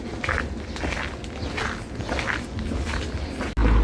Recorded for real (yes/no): yes